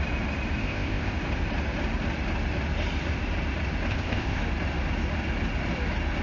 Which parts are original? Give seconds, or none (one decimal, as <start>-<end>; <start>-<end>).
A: 0.0-0.6; 1.1-3.9; 4.4-6.2